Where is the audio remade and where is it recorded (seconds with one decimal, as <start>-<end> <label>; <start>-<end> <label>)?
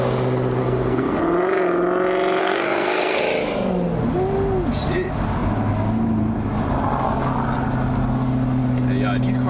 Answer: 0.0-0.6 recorded; 0.6-1.2 remade; 1.2-2.4 recorded; 2.4-3.2 remade; 3.2-9.5 recorded